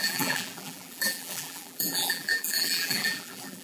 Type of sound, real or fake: fake